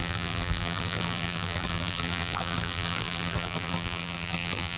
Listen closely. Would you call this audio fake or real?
fake